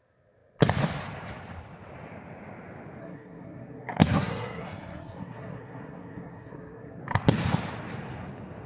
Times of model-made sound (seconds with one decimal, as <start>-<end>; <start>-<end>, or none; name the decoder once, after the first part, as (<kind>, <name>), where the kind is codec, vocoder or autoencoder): 3.0-7.0 (codec, SNAC)